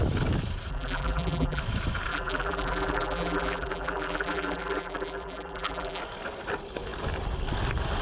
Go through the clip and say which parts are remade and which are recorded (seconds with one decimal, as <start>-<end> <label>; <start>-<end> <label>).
0.0-0.7 recorded; 0.7-1.6 remade; 1.6-2.1 recorded; 2.1-6.0 remade; 6.0-8.0 recorded